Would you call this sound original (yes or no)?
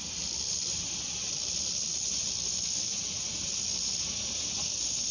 yes